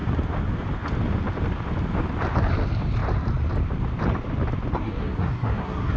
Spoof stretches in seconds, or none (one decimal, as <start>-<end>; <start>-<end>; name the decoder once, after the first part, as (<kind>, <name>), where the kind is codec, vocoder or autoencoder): 4.7-6.0 (codec, SNAC)